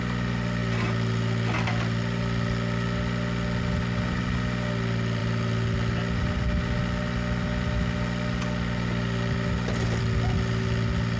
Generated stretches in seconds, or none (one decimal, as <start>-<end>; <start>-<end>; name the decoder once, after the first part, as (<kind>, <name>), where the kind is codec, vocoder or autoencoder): none